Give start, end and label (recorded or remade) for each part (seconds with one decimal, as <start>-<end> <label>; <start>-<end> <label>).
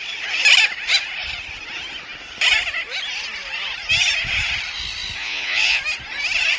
0.0-5.2 recorded; 5.2-5.8 remade; 5.8-6.6 recorded